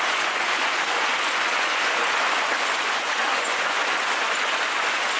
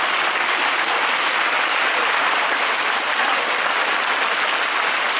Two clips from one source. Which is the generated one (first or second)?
first